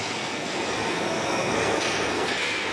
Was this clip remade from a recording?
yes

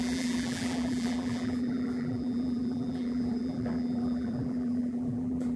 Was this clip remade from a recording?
yes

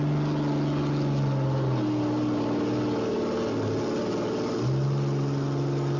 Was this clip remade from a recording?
no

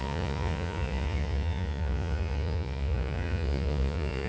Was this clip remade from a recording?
yes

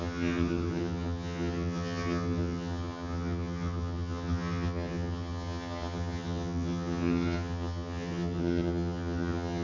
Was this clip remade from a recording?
yes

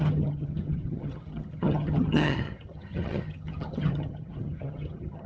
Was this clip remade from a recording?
yes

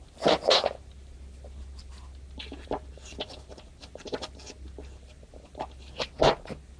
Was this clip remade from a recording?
no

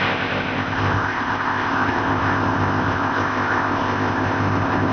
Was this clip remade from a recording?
yes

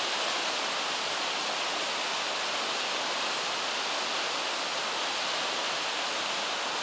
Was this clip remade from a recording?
no